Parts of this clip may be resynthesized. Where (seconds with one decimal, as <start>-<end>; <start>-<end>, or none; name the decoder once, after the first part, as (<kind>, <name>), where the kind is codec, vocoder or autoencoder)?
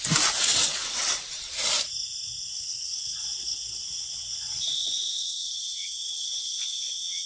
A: 0.5-1.4 (vocoder, WaveNeXt); 2.5-7.3